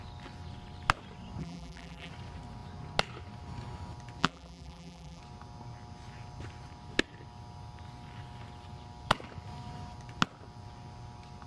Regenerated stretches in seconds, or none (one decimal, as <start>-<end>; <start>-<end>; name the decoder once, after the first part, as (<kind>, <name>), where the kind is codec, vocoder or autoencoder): 1.4-2.1 (vocoder, BigVGAN v2); 4.2-5.2